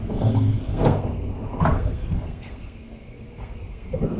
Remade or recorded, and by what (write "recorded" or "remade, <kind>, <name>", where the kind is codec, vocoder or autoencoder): remade, codec, SNAC